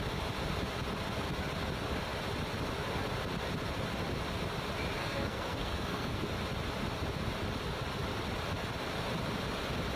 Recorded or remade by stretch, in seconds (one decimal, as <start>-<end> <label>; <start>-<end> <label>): 0.0-5.0 recorded; 5.0-6.2 remade; 6.2-10.0 recorded